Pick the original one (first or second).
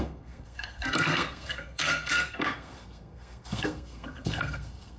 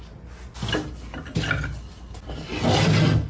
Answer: second